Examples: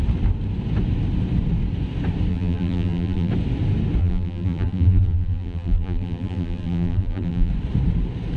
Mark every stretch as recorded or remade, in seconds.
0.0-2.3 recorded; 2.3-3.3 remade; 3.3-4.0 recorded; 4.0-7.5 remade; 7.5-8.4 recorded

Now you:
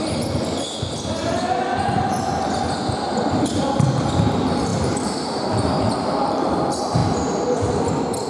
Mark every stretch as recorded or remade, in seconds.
0.0-4.7 recorded; 4.7-6.5 remade; 6.5-8.3 recorded

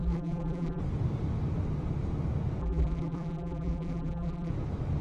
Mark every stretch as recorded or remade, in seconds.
0.0-0.8 remade; 0.8-2.6 recorded; 2.6-4.5 remade; 4.5-5.0 recorded

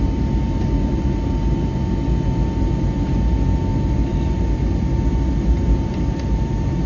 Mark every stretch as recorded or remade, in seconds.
0.0-3.7 recorded; 3.7-6.9 remade

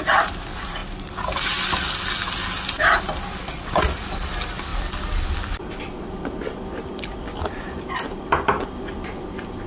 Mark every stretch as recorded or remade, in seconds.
0.0-0.8 remade; 0.8-2.8 recorded; 2.8-9.7 remade

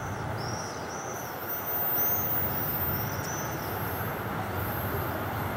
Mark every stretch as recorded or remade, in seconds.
0.0-5.6 recorded

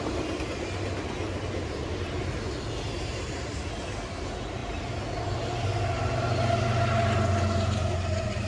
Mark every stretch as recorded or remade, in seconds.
0.0-8.5 recorded